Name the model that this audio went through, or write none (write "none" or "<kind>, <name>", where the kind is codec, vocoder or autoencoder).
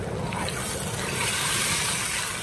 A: none